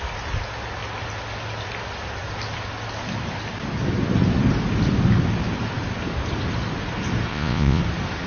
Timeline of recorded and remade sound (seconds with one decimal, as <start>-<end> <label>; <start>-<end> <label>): 0.0-7.3 recorded; 7.3-7.8 remade; 7.8-8.3 recorded